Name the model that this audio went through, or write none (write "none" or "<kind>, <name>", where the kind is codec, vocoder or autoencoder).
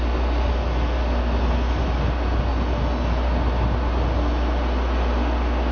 none